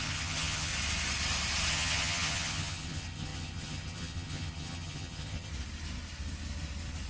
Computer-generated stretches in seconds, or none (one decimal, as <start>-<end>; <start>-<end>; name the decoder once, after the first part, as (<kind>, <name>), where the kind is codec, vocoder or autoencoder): 0.0-0.7 (vocoder, HiFi-GAN); 1.7-5.5

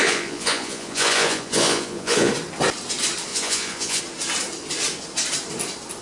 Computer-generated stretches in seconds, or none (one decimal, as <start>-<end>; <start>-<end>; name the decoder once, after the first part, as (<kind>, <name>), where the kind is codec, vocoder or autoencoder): 0.0-2.3 (vocoder, Vocos); 3.3-4.0

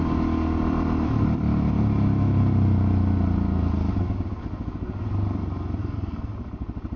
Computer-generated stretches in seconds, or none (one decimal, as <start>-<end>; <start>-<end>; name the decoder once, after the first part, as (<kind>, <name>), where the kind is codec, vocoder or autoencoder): 5.8-6.3 (codec, SNAC)

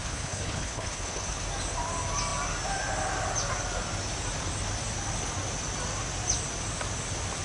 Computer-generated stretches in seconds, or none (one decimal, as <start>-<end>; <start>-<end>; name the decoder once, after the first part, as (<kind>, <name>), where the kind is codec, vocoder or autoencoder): 0.0-1.4 (codec, HILCodec)

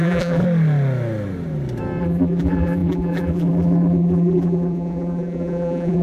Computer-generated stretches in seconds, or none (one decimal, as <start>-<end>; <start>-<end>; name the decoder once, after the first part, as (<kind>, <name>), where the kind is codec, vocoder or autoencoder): 0.0-0.4 (vocoder, BigVGAN v2); 2.0-6.0